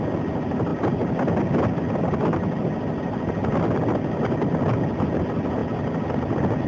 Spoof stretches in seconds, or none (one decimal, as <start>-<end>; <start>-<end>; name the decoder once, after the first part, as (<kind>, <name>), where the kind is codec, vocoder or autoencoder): none